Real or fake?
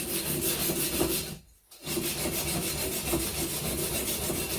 real